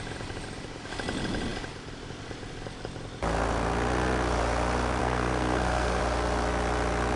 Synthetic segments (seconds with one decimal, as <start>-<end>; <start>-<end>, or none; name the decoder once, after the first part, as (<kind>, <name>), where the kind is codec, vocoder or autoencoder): 5.0-6.0 (codec, SNAC)